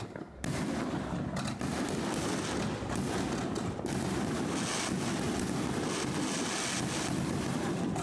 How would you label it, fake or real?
real